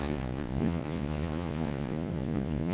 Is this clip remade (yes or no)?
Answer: yes